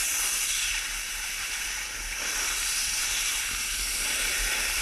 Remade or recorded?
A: recorded